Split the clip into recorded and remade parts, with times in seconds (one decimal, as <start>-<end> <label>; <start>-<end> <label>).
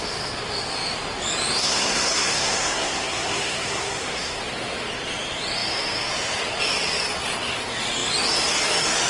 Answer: 0.0-1.6 recorded; 1.6-4.4 remade; 4.4-9.1 recorded